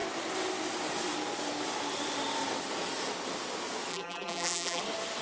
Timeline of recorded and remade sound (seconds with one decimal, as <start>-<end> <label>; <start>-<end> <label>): 0.0-3.9 recorded; 3.9-4.8 remade; 4.8-5.2 recorded